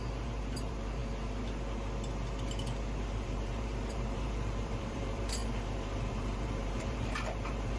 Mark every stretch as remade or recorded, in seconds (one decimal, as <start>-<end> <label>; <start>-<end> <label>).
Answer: 0.0-1.0 remade; 1.0-3.0 recorded; 3.0-7.8 remade